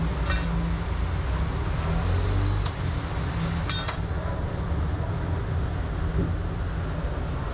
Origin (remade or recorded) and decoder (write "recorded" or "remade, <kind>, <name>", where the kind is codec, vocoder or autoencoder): recorded